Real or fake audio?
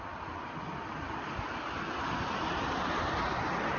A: real